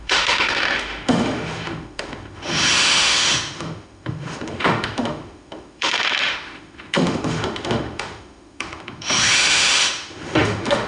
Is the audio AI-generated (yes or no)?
yes